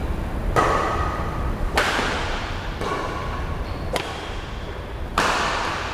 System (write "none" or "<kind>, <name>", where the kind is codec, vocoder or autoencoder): vocoder, BigVGAN v2